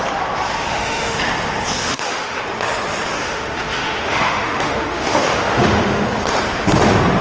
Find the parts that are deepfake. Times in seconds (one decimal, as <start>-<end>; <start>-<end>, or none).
0.7-1.2; 1.8-2.4; 3.2-6.1